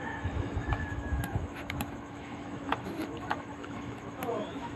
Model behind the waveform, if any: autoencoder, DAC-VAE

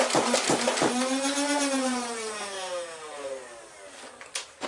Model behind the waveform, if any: none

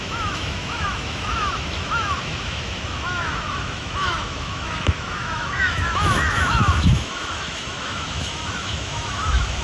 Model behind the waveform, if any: autoencoder, DAC-VAE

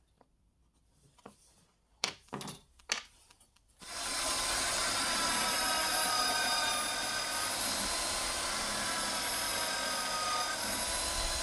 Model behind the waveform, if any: none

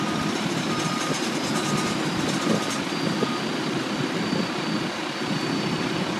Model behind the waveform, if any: none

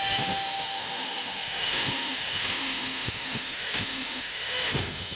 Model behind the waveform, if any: autoencoder, DAC-VAE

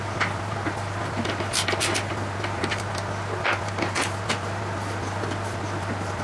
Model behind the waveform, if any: none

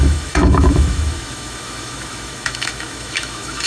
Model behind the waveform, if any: autoencoder, DAC-VAE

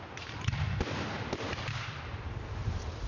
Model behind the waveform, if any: none